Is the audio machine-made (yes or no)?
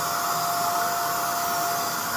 no